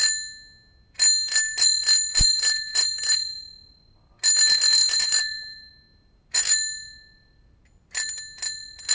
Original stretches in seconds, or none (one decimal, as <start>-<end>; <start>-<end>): 0.0-2.3; 3.4-4.8; 5.7-8.9